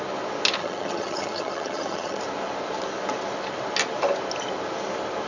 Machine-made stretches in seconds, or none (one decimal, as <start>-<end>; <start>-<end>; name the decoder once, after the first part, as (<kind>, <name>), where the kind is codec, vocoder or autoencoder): 0.6-2.2 (vocoder, HiFi-GAN)